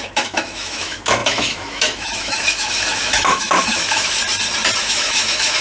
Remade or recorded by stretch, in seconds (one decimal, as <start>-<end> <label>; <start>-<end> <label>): 0.0-4.2 remade; 4.2-4.8 recorded; 4.8-5.6 remade